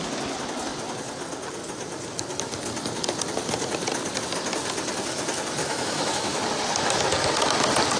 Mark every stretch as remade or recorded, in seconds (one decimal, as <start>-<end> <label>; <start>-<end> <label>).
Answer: 0.0-5.6 recorded; 5.6-6.4 remade; 6.4-8.0 recorded